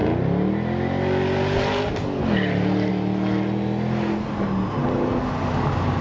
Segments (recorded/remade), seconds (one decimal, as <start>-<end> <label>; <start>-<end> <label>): 0.0-6.0 recorded